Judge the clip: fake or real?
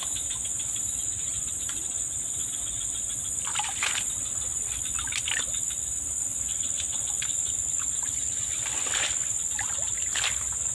real